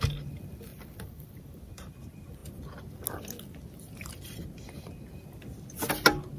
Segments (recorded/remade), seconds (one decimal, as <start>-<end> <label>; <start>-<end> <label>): 0.0-0.7 recorded; 0.7-2.0 remade; 2.0-6.4 recorded

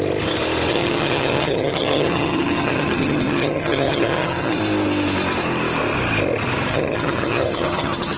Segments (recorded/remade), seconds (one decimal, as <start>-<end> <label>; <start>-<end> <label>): 0.0-0.7 recorded; 0.7-4.6 remade; 4.6-6.7 recorded; 6.7-8.2 remade

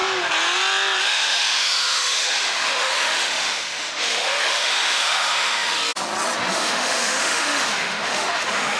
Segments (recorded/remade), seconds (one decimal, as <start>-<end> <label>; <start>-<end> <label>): 0.0-1.0 recorded; 1.0-5.8 remade; 5.8-6.5 recorded; 6.5-8.8 remade

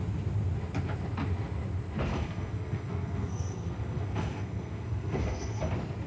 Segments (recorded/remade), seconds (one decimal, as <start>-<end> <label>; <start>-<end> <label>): 0.0-2.1 recorded; 2.1-5.6 remade; 5.6-6.1 recorded

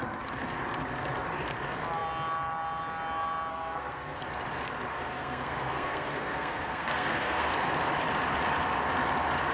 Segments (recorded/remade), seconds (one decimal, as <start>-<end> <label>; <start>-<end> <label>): 0.0-3.5 recorded; 3.5-4.2 remade; 4.2-4.9 recorded; 4.9-7.5 remade; 7.5-9.5 recorded

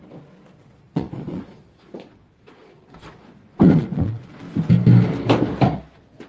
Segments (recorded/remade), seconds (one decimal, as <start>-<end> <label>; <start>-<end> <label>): 0.0-0.6 recorded; 0.6-4.4 remade; 4.4-6.3 recorded

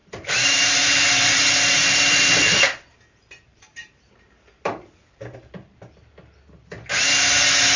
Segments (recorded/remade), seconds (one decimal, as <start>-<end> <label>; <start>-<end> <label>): 0.0-2.6 remade; 2.6-3.5 recorded; 3.5-5.4 remade; 5.4-7.8 recorded

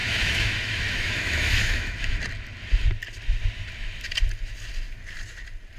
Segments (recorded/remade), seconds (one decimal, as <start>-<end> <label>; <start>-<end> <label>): 0.0-2.1 remade; 2.1-5.8 recorded